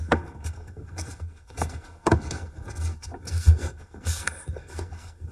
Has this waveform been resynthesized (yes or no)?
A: yes